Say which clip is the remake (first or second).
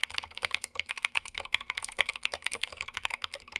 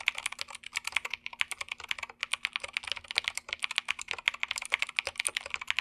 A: first